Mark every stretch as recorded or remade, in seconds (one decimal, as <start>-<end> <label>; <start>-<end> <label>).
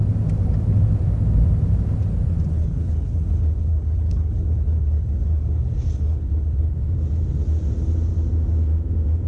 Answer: 0.0-2.5 recorded; 2.5-6.6 remade; 6.6-9.3 recorded